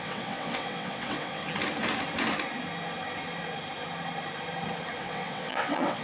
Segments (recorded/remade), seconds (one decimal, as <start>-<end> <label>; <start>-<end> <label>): 0.0-1.4 remade; 1.4-5.0 recorded; 5.0-6.0 remade